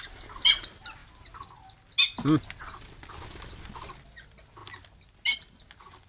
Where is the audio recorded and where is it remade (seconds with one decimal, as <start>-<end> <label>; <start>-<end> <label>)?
0.0-6.1 recorded